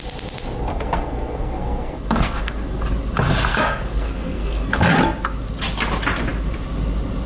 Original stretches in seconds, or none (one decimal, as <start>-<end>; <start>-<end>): 0.0-0.7; 2.8-3.5; 4.8-7.3